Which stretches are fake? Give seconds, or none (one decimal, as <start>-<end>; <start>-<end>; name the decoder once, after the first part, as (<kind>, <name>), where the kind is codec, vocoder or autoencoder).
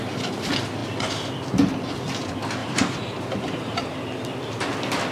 2.6-4.0 (vocoder, BigVGAN v2)